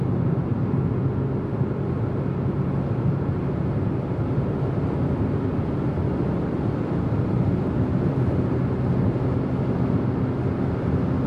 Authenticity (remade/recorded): recorded